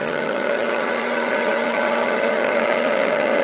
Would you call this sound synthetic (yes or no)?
yes